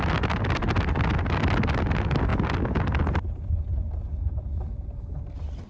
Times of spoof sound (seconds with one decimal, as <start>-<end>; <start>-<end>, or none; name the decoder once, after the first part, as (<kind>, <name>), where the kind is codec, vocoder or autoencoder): none